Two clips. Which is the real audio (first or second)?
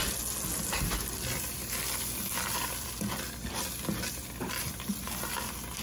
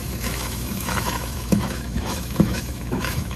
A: first